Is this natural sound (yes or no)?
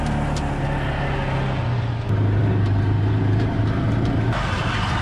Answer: yes